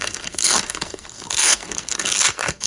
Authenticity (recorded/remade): remade